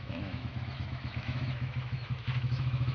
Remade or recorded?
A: remade